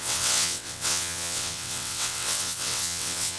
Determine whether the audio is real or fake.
fake